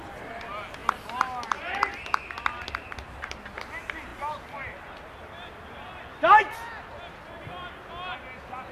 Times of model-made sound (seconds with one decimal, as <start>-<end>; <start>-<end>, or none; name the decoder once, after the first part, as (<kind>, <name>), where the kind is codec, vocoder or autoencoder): none